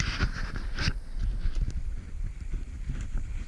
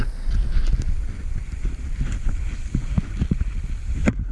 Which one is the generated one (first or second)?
first